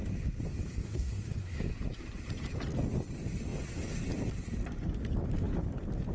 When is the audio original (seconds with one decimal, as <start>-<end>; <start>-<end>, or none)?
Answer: 0.0-0.8; 1.7-6.1